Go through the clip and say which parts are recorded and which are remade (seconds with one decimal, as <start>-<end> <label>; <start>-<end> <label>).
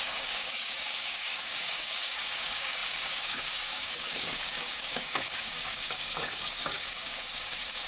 0.0-7.9 remade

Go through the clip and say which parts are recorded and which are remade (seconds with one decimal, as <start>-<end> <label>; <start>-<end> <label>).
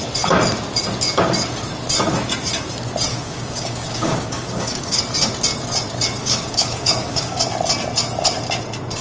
0.0-3.1 recorded; 3.1-5.0 remade; 5.0-6.2 recorded; 6.2-7.4 remade; 7.4-9.0 recorded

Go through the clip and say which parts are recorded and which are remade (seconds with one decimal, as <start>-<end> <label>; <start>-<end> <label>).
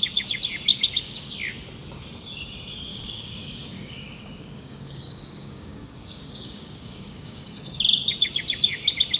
0.0-0.7 recorded; 0.7-1.3 remade; 1.3-2.9 recorded; 2.9-7.8 remade; 7.8-9.2 recorded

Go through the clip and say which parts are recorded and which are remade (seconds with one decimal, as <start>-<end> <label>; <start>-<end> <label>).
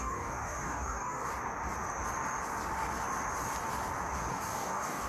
0.0-1.3 remade; 1.3-4.3 recorded; 4.3-5.1 remade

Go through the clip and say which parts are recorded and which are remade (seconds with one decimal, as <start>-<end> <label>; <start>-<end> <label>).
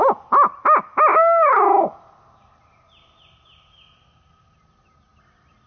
0.0-1.1 recorded; 1.1-2.0 remade; 2.0-5.7 recorded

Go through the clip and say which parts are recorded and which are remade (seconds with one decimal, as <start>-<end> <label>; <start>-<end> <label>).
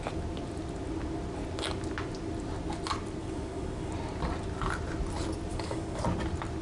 0.0-3.2 recorded; 3.2-3.9 remade; 3.9-5.5 recorded; 5.5-6.0 remade; 6.0-6.6 recorded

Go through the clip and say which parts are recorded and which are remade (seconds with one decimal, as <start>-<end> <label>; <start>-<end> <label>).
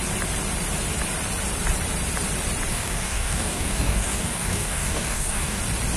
0.0-2.7 recorded; 2.7-5.6 remade; 5.6-6.0 recorded